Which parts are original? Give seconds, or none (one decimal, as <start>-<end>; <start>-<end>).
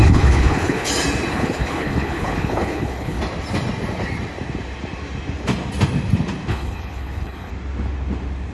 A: 0.9-1.3; 3.2-6.5; 7.5-8.5